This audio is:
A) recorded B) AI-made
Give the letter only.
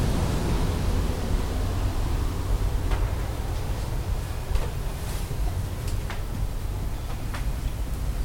A